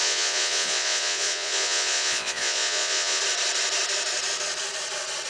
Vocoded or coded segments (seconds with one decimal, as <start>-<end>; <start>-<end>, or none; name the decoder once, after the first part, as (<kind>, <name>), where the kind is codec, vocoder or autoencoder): 0.0-3.2 (vocoder, Vocos)